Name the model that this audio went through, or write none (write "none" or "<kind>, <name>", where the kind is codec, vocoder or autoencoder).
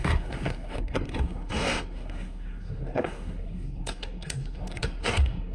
codec, SNAC